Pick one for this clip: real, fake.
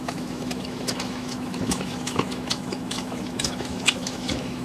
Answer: fake